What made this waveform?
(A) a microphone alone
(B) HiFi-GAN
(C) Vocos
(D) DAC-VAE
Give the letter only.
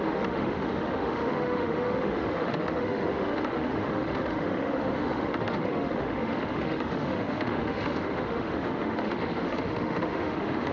D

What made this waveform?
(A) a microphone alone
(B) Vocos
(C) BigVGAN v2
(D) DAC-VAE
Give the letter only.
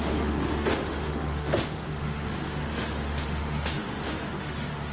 D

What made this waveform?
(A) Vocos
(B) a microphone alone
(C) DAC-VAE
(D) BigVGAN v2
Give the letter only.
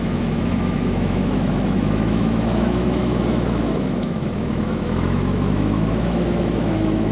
C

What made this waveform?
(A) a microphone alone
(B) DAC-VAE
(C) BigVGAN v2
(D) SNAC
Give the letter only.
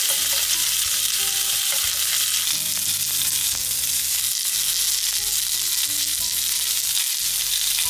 A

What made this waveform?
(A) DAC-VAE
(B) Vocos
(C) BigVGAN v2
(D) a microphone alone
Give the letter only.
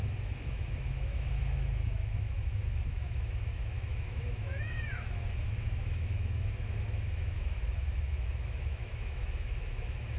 A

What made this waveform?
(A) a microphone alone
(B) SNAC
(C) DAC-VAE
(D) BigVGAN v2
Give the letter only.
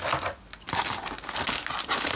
A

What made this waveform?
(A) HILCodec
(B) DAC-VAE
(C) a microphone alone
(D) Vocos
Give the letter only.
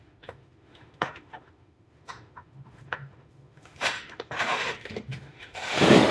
B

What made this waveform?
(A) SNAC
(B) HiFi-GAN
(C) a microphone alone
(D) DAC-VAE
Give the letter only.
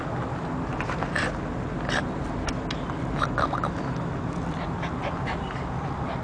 C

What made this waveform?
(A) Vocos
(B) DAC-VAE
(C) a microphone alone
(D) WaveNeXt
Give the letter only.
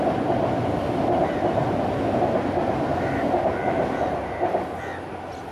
C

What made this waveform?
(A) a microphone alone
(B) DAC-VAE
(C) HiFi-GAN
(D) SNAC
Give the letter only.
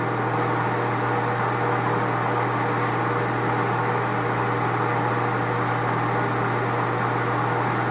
A